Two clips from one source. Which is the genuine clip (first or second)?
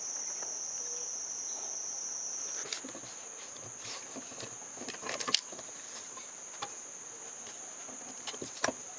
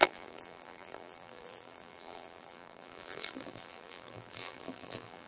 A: first